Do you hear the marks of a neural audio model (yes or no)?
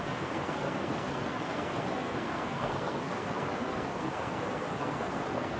yes